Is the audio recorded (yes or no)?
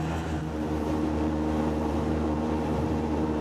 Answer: no